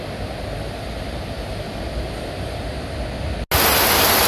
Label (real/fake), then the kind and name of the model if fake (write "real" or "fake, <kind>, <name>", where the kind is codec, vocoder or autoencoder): real